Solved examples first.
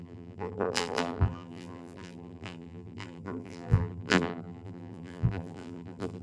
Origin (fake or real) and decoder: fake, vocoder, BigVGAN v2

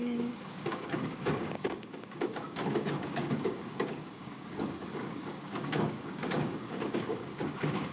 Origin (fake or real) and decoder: fake, codec, DAC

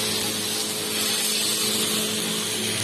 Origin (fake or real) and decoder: real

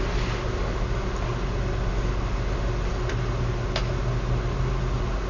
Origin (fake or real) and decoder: real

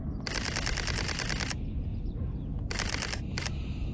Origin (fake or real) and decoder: real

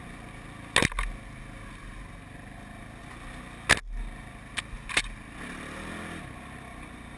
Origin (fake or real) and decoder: real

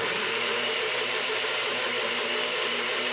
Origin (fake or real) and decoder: fake, vocoder, BigVGAN v2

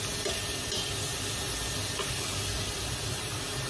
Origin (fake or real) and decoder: real